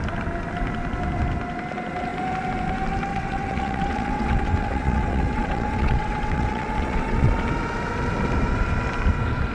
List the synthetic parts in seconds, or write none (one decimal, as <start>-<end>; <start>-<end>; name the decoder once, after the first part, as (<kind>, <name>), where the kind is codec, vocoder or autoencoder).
3.1-7.4 (vocoder, WaveNeXt)